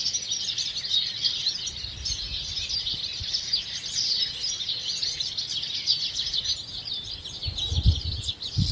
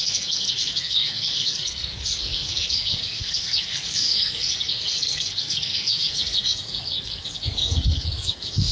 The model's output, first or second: second